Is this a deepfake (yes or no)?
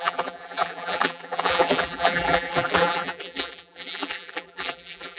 yes